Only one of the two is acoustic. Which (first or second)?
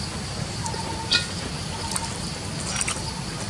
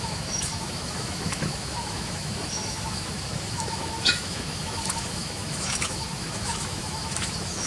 first